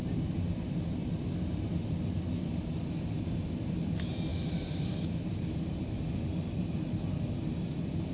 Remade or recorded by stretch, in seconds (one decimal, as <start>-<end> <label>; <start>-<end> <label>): 0.0-4.3 recorded; 4.3-5.3 remade; 5.3-8.1 recorded